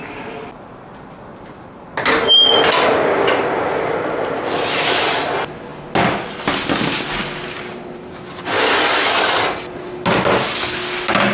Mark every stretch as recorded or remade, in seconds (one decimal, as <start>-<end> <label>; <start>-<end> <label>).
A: 0.0-11.3 recorded